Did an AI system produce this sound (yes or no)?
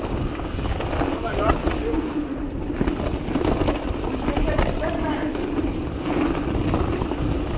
no